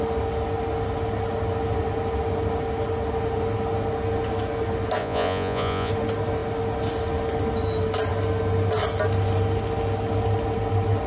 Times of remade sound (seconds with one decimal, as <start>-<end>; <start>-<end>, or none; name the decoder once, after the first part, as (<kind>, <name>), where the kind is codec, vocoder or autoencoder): 5.0-5.9 (vocoder, Vocos)